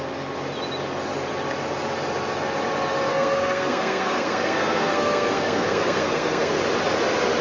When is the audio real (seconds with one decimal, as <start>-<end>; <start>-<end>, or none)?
0.0-3.1; 6.6-7.4